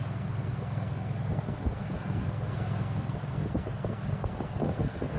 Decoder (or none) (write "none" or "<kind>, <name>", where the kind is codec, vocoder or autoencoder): codec, SNAC